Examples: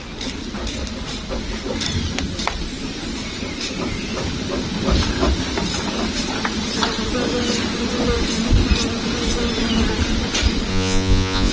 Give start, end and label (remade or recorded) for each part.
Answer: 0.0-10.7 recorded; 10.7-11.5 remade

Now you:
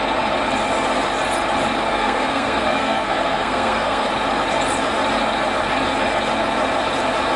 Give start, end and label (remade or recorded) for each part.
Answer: 0.0-1.9 recorded; 1.9-4.1 remade; 4.1-7.4 recorded

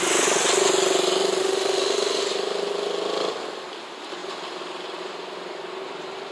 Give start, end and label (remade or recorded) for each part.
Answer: 0.0-1.4 recorded; 1.4-2.3 remade; 2.3-6.3 recorded

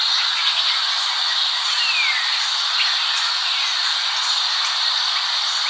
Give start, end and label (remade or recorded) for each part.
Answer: 0.0-5.7 recorded

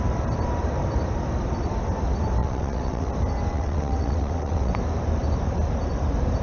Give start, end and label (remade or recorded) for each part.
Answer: 0.0-2.4 recorded; 2.4-3.1 remade; 3.1-3.5 recorded; 3.5-4.7 remade; 4.7-6.4 recorded

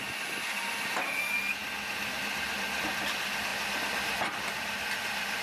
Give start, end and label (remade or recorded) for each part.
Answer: 0.0-5.4 recorded

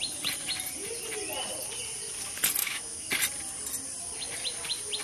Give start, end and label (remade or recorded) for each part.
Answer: 0.0-2.6 recorded; 2.6-3.1 remade; 3.1-5.0 recorded